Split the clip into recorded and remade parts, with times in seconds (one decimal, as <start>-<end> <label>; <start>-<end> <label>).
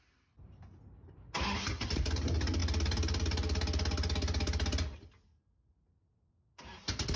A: 0.0-7.2 recorded